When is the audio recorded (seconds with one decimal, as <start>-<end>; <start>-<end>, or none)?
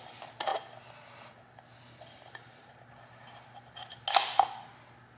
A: 0.0-5.2